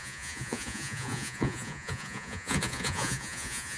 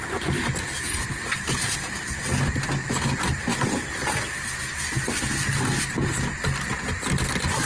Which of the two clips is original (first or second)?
second